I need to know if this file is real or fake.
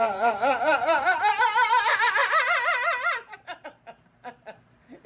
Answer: fake